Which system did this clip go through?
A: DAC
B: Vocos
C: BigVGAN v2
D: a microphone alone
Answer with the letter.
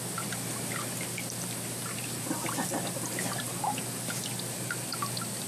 D